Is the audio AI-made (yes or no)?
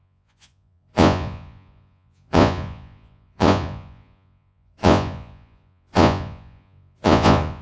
yes